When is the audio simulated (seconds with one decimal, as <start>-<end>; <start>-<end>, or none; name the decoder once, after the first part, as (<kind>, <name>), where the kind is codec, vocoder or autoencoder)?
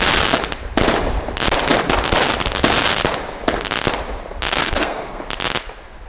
4.6-5.2 (codec, SNAC)